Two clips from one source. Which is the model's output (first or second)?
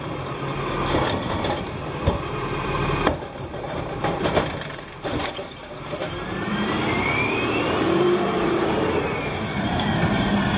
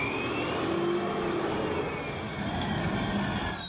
first